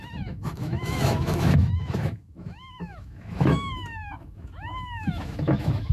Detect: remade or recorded remade